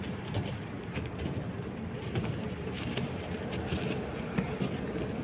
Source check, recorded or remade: recorded